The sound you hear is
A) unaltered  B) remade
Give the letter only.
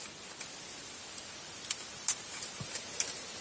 A